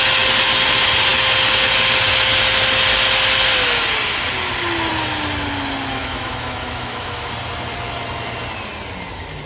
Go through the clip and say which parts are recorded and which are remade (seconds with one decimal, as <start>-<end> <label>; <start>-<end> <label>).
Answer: 0.0-6.0 recorded; 6.0-7.3 remade; 7.3-9.5 recorded